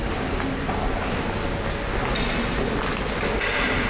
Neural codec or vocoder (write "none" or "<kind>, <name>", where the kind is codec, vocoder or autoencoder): none